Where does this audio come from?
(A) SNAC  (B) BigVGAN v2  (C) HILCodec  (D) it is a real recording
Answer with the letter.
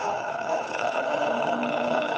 C